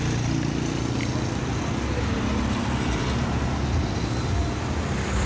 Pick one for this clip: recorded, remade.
recorded